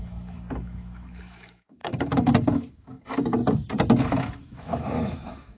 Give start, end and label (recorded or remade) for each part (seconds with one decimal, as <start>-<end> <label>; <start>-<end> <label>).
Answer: 0.0-3.4 remade; 3.4-4.0 recorded; 4.0-5.6 remade